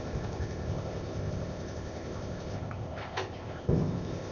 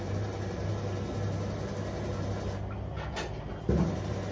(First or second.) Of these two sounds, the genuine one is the second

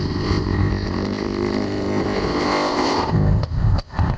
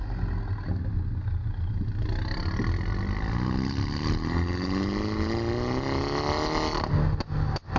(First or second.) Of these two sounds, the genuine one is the second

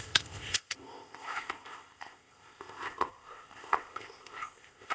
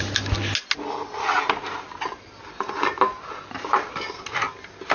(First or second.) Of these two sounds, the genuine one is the second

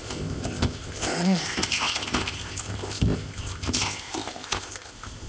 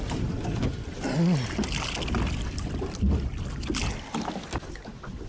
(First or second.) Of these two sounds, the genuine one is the second